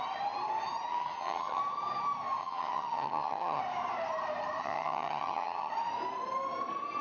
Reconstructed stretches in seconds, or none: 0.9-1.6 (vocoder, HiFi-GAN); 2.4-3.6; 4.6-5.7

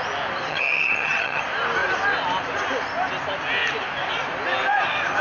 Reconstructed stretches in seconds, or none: 0.5-1.4 (vocoder, HiFi-GAN)

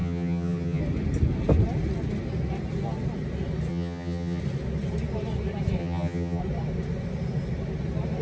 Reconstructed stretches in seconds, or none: 0.0-0.8 (vocoder, HiFi-GAN); 3.7-4.4; 5.8-6.4

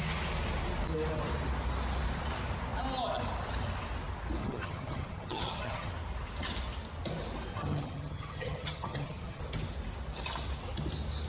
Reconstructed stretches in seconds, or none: 4.4-5.9 (vocoder, HiFi-GAN); 7.5-9.4

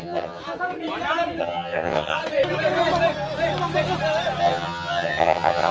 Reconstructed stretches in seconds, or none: 0.0-0.4 (vocoder, HiFi-GAN); 1.4-2.2; 4.4-5.7

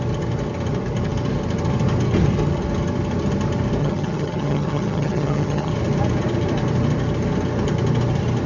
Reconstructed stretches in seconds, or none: 3.8-5.7 (vocoder, HiFi-GAN)

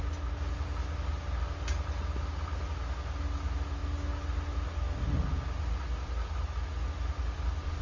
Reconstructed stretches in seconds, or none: none

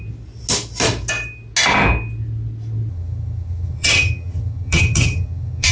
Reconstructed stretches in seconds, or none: 2.9-5.7 (vocoder, HiFi-GAN)